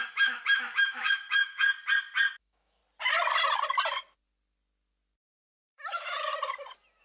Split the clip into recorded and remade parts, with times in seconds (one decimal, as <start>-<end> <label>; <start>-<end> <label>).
0.0-1.7 remade; 1.7-2.4 recorded; 2.4-2.8 remade; 2.8-5.3 recorded; 5.3-6.3 remade; 6.3-7.0 recorded